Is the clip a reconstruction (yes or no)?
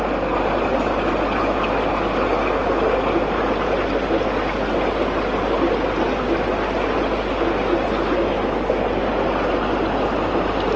no